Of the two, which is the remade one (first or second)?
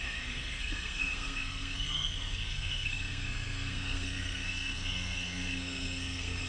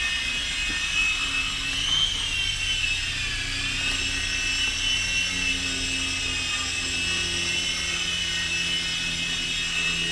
first